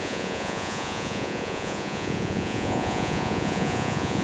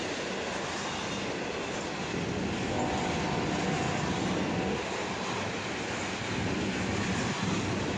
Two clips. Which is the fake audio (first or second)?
first